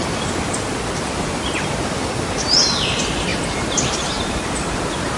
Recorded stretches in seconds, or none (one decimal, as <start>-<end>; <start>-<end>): 0.0-5.2